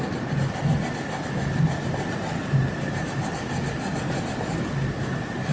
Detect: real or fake real